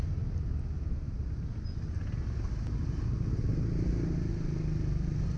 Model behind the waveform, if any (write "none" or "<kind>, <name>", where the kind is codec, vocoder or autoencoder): none